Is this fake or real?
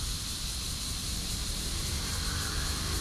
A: fake